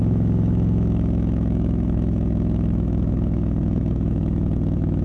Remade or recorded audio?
remade